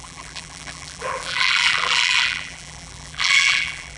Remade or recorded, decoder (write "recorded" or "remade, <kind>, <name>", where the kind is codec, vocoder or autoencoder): remade, vocoder, BigVGAN v2